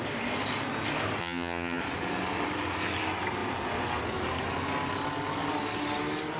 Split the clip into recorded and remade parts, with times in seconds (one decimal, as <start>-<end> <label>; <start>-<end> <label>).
0.0-1.2 recorded; 1.2-1.8 remade; 1.8-6.4 recorded